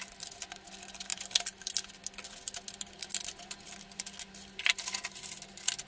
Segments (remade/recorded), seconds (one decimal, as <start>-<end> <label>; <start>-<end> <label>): 0.0-5.9 recorded